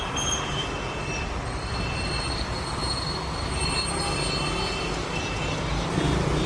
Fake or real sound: real